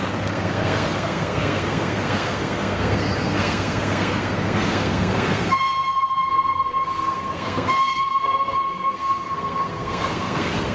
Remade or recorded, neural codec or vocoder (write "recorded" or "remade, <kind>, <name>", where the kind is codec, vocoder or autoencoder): remade, codec, SNAC